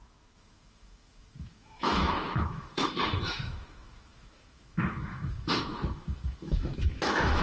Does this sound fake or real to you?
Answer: fake